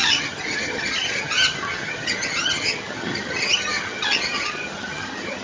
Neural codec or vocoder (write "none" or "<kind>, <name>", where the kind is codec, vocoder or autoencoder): vocoder, HiFi-GAN